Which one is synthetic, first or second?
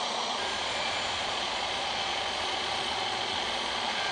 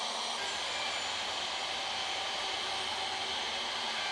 first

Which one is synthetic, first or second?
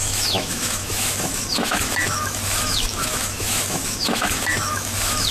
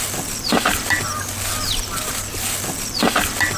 first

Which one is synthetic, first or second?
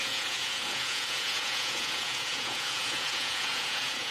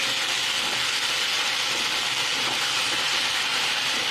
first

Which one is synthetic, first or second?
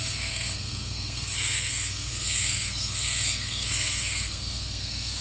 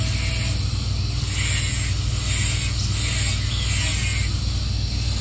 first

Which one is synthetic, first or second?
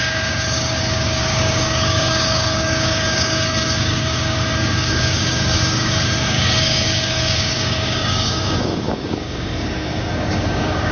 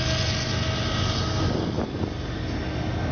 first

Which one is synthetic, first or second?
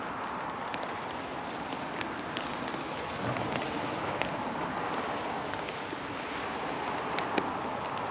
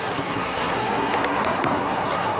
second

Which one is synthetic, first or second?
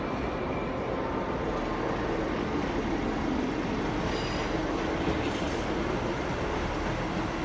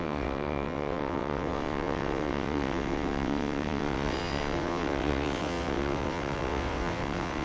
second